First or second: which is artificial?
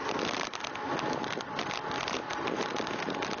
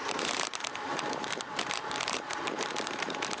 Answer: second